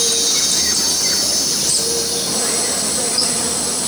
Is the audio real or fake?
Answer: real